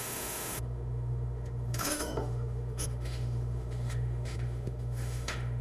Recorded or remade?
remade